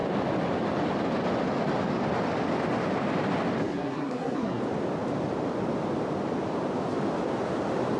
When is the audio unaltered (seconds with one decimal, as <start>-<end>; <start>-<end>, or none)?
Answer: 0.0-3.6; 4.6-8.0